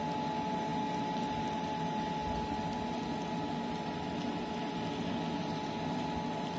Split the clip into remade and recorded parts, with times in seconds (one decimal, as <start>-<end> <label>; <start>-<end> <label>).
0.0-6.6 recorded